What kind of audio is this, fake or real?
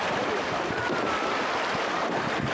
fake